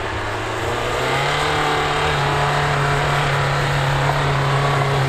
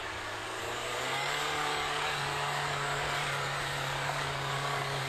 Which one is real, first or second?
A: first